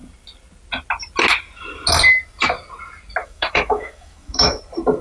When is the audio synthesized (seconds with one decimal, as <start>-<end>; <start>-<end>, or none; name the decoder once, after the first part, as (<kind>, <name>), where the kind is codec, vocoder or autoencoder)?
3.2-4.6 (autoencoder, DAC-VAE)